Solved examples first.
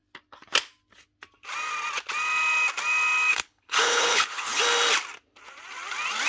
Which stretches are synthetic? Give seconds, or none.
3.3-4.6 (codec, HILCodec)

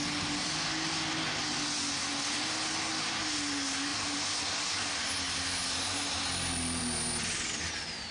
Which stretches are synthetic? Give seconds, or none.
none